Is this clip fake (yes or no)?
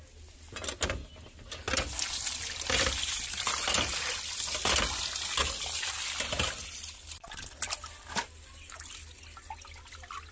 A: no